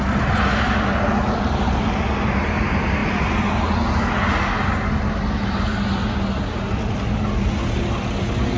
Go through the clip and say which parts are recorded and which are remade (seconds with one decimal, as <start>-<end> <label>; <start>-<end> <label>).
0.0-8.6 recorded